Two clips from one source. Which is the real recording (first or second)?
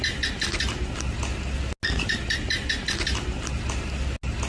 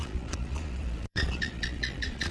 first